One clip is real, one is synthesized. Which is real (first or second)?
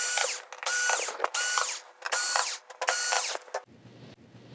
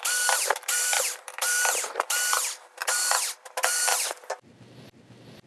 first